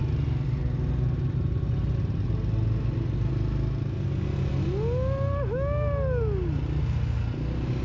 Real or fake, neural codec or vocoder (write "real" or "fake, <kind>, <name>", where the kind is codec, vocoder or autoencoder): real